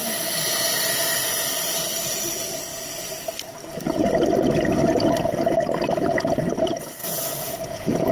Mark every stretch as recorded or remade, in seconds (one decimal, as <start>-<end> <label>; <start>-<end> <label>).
0.0-7.0 recorded; 7.0-8.1 remade